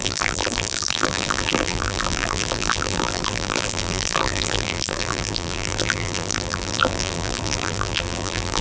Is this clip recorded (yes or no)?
no